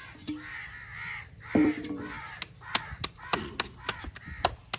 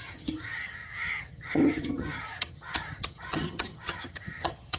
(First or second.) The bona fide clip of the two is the first